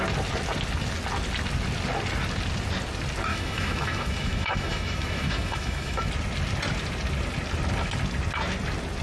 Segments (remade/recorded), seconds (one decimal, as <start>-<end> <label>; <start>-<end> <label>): 0.0-3.3 recorded; 3.3-6.1 remade; 6.1-9.0 recorded